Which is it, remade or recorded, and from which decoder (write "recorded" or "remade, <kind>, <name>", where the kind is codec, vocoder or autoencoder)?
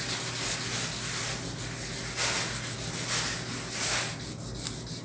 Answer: recorded